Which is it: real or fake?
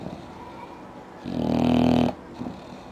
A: real